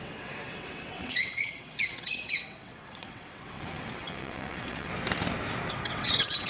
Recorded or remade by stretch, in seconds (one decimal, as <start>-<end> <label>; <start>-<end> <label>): 0.0-4.9 remade; 4.9-5.7 recorded; 5.7-6.5 remade